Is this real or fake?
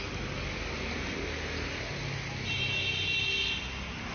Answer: real